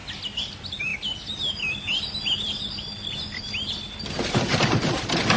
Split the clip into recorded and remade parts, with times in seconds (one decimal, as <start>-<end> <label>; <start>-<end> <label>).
0.0-0.5 recorded; 0.5-0.9 remade; 0.9-4.1 recorded; 4.1-5.4 remade